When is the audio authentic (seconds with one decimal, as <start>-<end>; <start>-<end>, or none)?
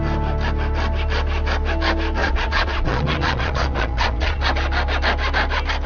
0.0-2.2; 4.4-5.9